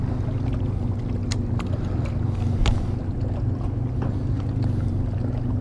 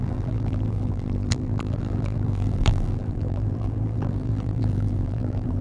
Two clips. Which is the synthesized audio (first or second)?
second